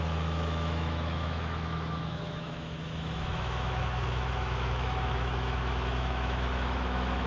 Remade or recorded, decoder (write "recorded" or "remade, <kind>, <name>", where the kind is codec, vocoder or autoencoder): remade, autoencoder, DAC-VAE